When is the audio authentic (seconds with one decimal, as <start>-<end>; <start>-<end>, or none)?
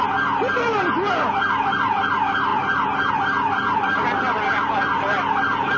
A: 0.0-5.8